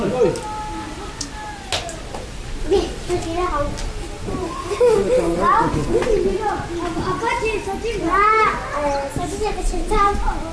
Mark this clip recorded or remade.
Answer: recorded